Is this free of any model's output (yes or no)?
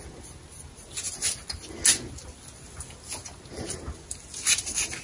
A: yes